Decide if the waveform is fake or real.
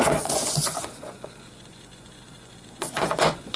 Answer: fake